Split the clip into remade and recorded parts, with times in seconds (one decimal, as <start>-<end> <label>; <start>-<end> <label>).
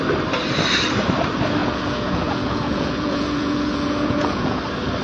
0.0-1.6 recorded; 1.6-4.6 remade; 4.6-5.0 recorded